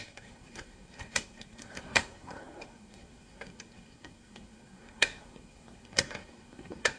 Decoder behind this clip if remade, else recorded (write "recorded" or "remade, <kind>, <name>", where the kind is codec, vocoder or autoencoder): remade, codec, SNAC